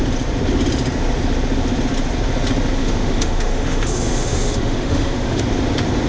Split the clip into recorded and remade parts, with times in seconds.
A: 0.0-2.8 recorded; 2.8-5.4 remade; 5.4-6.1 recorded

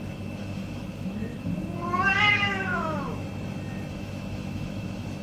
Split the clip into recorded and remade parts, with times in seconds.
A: 0.0-1.5 remade; 1.5-2.3 recorded; 2.3-3.1 remade; 3.1-3.9 recorded; 3.9-5.2 remade

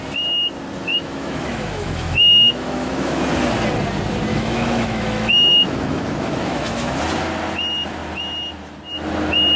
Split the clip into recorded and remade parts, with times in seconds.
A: 0.0-0.9 recorded; 0.9-3.2 remade; 3.2-4.3 recorded; 4.3-7.0 remade; 7.0-9.6 recorded

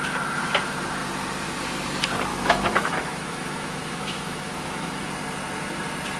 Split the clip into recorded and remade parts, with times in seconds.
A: 0.0-2.3 recorded; 2.3-5.1 remade; 5.1-6.2 recorded

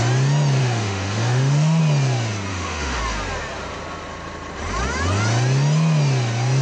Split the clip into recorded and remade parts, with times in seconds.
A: 0.0-0.6 recorded; 0.6-1.8 remade; 1.8-2.5 recorded; 2.5-3.0 remade; 3.0-6.6 recorded